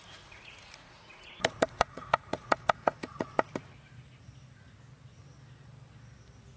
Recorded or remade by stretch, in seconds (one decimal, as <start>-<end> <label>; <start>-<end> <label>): 0.0-3.3 remade; 3.3-6.6 recorded